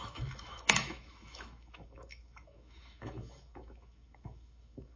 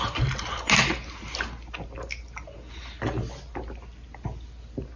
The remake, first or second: first